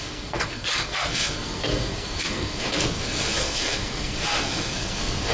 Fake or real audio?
fake